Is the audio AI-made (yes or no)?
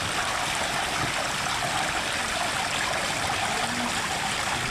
no